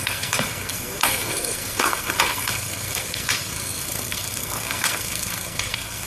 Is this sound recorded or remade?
remade